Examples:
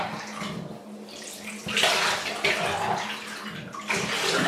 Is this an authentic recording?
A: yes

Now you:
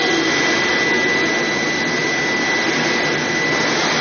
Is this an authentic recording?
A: yes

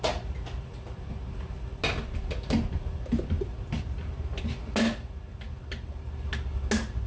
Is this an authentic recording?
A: yes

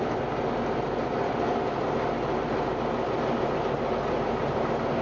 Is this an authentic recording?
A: yes